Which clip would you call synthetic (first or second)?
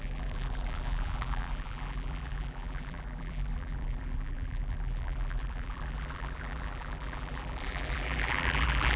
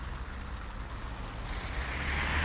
first